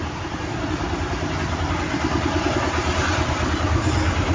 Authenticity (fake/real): real